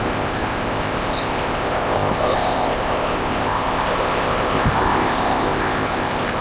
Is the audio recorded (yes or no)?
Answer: no